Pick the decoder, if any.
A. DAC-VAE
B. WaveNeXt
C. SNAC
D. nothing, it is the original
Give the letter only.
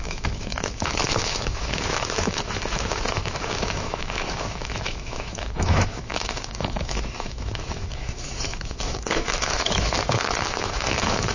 A